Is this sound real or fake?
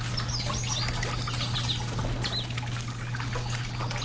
real